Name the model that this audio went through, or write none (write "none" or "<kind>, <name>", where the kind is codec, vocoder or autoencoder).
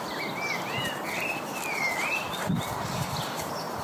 vocoder, BigVGAN v2